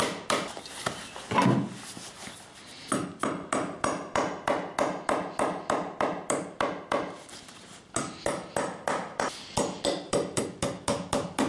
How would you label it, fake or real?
real